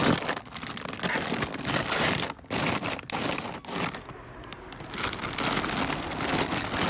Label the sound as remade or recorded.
recorded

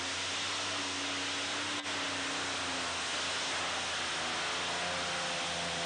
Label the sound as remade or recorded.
recorded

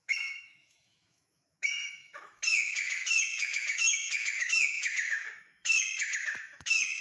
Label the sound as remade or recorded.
remade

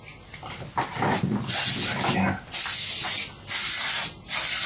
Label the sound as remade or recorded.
recorded